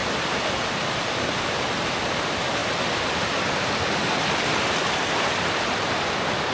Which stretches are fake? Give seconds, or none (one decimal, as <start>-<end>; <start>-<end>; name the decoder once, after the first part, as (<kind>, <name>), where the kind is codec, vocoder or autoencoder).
1.1-6.5 (vocoder, BigVGAN v2)